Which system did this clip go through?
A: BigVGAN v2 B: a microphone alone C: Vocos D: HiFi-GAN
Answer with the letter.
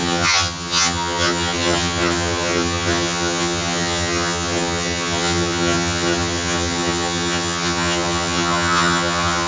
D